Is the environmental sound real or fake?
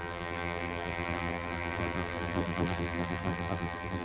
fake